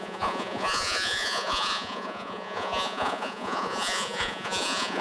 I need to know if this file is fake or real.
fake